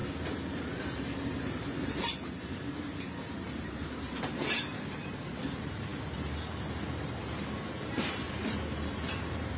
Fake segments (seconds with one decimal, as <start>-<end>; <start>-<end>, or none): 0.8-9.6